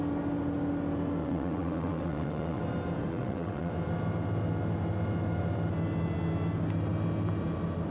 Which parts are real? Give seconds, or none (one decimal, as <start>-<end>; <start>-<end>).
0.0-1.2; 2.6-3.1; 3.7-7.9